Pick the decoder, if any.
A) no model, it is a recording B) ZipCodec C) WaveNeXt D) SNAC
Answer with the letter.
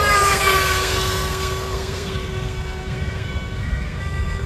D